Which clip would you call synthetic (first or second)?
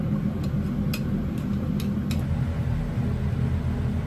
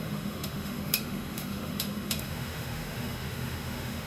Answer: second